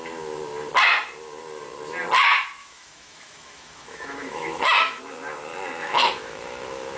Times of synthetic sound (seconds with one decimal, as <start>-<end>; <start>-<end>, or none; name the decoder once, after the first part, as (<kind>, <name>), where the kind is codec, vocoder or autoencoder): 2.6-5.0 (autoencoder, DAC-VAE); 5.8-7.0